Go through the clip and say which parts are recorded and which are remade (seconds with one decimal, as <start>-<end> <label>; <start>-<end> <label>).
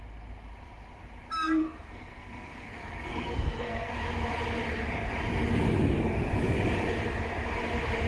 0.0-1.6 recorded; 1.6-3.9 remade; 3.9-8.1 recorded